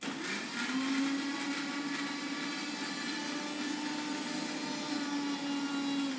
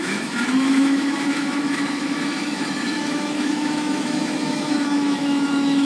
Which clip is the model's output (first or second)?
second